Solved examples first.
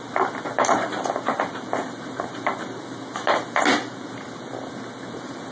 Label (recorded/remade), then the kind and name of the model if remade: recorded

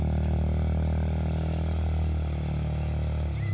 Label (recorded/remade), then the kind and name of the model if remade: recorded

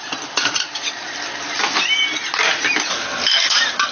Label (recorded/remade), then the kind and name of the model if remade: recorded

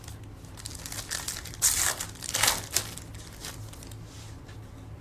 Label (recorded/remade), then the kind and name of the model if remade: recorded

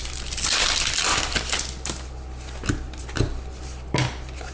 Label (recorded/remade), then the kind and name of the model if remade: recorded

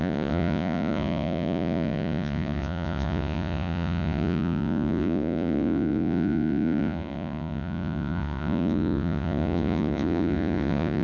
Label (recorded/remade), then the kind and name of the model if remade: remade, vocoder, Vocos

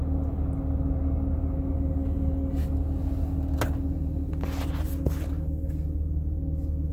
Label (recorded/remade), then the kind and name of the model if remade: recorded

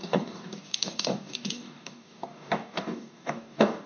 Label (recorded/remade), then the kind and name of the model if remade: remade, codec, DAC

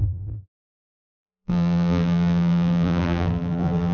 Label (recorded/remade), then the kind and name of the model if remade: remade, vocoder, BigVGAN v2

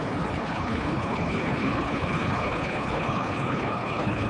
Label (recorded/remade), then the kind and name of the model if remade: remade, codec, HILCodec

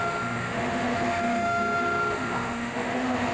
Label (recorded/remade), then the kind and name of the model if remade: remade, autoencoder, DAC-VAE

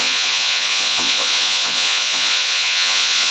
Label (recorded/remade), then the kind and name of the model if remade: remade, vocoder, Vocos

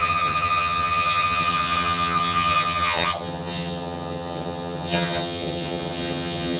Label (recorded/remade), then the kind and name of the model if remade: remade, vocoder, HiFi-GAN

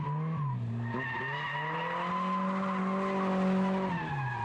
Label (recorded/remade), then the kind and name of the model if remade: recorded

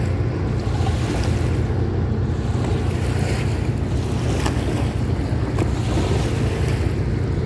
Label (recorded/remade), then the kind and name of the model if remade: recorded